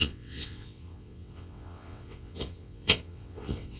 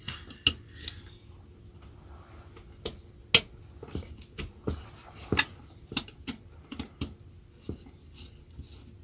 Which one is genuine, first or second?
second